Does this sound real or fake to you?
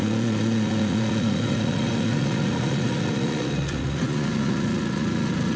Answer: fake